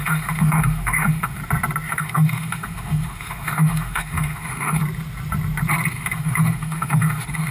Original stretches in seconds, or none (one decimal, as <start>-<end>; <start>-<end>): 1.4-1.9; 4.8-5.9